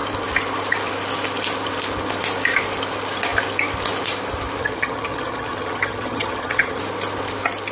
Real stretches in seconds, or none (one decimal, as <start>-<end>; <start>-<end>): 0.0-4.6; 6.8-7.7